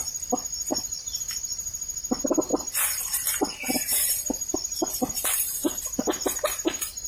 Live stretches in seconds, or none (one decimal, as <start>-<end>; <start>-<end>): 0.0-0.7; 1.2-2.5; 6.0-7.1